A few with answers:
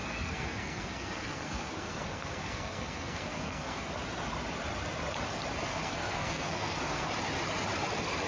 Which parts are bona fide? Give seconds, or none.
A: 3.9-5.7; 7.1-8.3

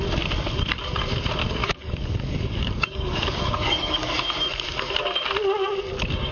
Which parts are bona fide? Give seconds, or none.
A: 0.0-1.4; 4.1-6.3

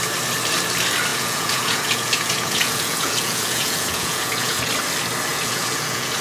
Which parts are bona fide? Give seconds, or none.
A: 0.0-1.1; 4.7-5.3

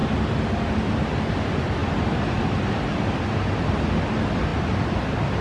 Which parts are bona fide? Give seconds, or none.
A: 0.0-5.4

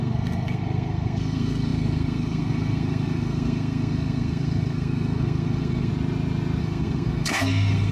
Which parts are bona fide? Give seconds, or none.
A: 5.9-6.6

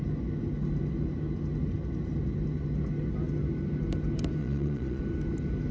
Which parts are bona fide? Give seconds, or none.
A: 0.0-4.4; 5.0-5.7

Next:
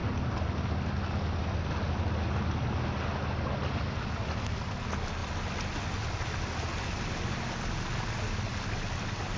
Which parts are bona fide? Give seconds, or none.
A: 0.0-9.4